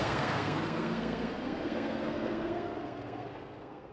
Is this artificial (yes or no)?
yes